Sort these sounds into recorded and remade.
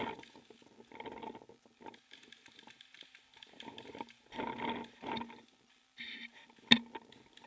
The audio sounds recorded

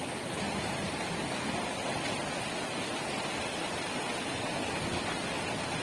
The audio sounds recorded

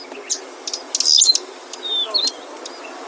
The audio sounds recorded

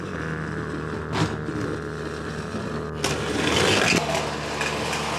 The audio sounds recorded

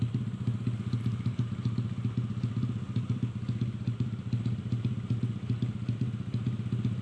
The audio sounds recorded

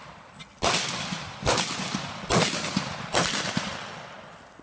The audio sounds recorded